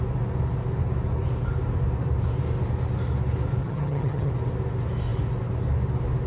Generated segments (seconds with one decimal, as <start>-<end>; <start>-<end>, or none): 3.6-4.3